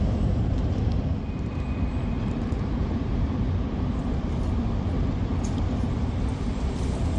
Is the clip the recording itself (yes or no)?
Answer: yes